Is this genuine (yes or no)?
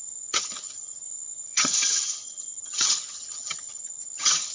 no